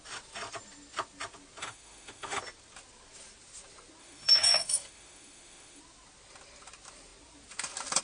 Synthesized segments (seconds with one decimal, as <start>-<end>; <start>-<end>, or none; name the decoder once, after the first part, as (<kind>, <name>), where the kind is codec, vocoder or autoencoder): 1.6-2.4 (autoencoder, DAC-VAE); 4.0-5.8